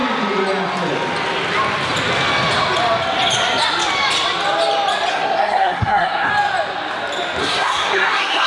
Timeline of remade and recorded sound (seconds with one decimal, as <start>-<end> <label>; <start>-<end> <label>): 0.0-5.1 recorded; 5.1-6.3 remade; 6.3-7.4 recorded; 7.4-8.5 remade